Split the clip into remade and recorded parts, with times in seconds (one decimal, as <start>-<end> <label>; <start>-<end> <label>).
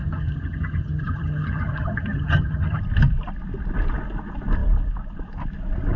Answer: 0.0-2.8 remade; 2.8-6.0 recorded